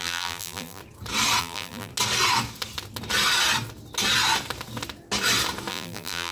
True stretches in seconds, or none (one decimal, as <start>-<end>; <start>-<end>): 0.8-1.4; 1.9-5.7